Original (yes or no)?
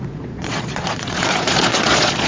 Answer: no